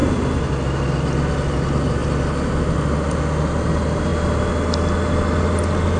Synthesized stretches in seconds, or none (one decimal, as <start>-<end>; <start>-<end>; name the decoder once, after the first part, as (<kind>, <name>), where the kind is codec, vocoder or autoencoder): none